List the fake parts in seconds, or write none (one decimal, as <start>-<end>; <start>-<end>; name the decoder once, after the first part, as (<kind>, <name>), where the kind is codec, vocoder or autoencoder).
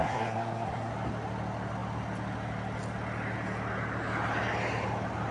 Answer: 0.0-0.9 (codec, SNAC)